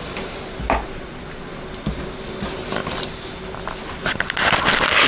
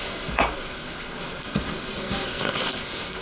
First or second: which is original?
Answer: first